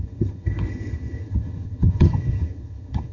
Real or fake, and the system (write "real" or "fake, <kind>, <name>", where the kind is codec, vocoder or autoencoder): fake, vocoder, HiFi-GAN